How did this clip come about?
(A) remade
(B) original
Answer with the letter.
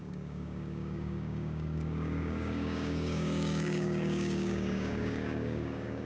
A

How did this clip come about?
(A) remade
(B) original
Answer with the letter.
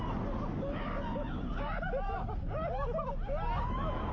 B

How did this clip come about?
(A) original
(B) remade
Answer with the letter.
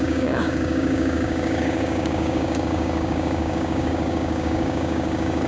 B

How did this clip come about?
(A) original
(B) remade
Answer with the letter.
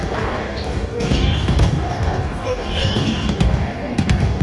B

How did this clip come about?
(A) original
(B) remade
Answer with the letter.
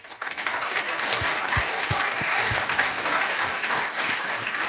B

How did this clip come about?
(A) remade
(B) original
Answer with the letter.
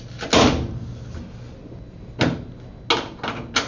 B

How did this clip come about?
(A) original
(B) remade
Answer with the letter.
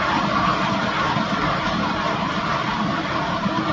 A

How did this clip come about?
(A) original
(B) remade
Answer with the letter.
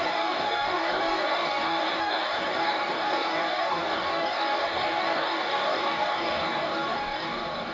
B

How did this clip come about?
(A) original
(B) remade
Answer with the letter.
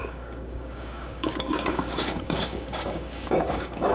B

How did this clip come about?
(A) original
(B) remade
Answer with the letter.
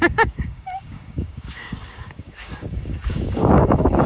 B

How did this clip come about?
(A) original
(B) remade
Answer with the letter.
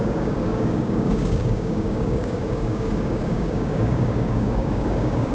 B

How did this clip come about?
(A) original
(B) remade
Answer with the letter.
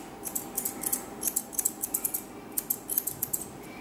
A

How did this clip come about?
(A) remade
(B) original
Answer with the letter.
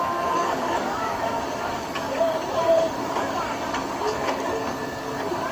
A